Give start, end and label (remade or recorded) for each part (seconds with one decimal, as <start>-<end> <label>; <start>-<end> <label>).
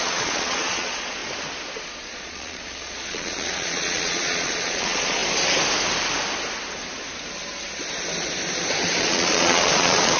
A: 0.0-1.2 remade; 1.2-1.9 recorded; 1.9-5.2 remade; 5.2-9.0 recorded; 9.0-10.2 remade